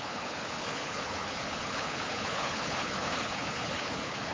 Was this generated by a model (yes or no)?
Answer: yes